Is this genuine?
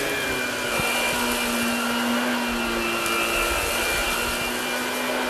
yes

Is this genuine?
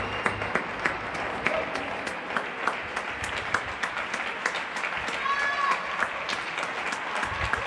yes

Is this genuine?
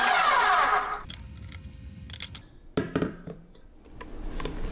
yes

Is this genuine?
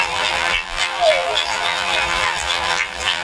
no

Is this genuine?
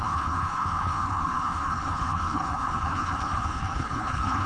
no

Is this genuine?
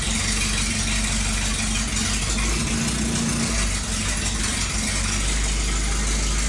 yes